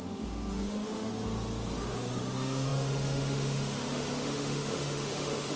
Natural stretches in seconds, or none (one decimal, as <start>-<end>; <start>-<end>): 1.1-1.8